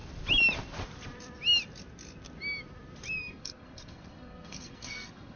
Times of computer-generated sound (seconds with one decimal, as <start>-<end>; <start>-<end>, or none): 3.2-5.4